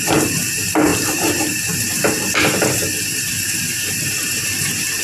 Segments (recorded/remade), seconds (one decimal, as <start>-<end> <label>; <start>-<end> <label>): 0.0-0.9 recorded; 0.9-1.8 remade; 1.8-3.1 recorded; 3.1-5.0 remade